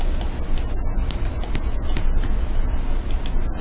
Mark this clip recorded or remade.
recorded